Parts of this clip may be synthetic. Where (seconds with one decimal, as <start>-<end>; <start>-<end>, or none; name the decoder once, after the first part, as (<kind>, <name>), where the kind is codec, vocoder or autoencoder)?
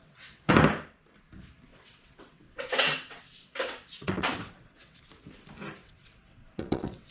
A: 0.0-0.5 (vocoder, WaveNeXt); 1.7-5.0; 5.8-7.1